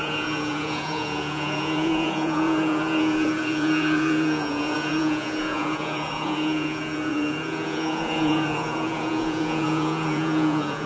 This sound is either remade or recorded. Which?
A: remade